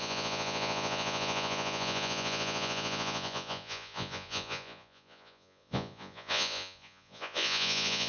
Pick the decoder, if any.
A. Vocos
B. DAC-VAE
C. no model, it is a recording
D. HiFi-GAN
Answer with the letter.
A